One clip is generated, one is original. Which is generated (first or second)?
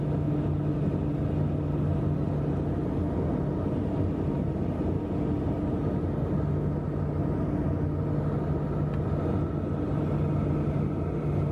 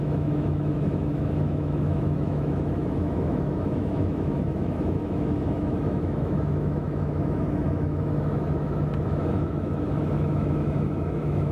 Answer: second